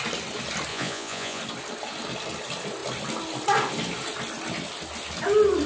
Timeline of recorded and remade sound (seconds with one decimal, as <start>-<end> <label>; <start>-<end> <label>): 0.0-0.7 recorded; 0.7-1.4 remade; 1.4-5.7 recorded